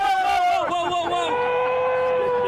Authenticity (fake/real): real